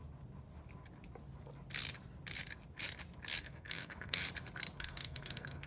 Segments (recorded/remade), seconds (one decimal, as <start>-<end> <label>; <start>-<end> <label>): 0.0-3.4 recorded; 3.4-4.2 remade; 4.2-4.8 recorded; 4.8-5.7 remade

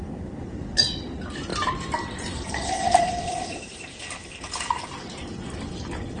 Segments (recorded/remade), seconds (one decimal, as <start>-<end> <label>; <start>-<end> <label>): 0.0-1.5 recorded; 1.5-5.2 remade; 5.2-6.2 recorded